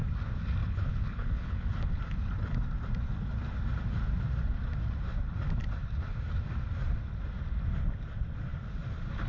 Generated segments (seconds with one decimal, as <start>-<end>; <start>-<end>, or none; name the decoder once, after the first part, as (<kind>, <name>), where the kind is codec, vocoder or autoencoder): 0.6-2.0 (codec, HILCodec)